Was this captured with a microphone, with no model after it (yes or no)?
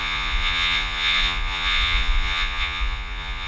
no